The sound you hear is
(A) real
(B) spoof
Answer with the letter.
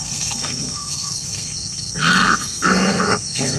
B